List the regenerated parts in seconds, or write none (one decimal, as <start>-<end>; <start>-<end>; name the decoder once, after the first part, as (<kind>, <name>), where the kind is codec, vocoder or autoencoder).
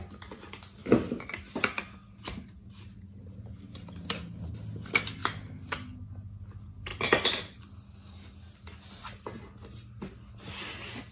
none